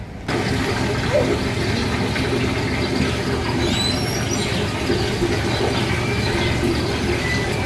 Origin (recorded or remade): recorded